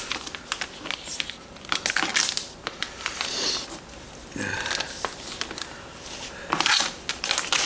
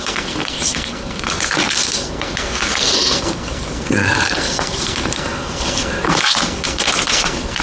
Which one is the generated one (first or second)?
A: second